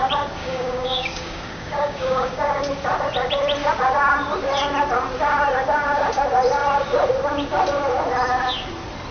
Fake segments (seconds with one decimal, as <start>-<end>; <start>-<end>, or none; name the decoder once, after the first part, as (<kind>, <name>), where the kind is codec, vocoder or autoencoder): 0.4-2.6 (codec, DAC)